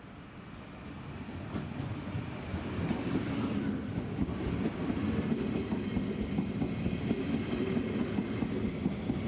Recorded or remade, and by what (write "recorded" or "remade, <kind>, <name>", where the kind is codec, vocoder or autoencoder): recorded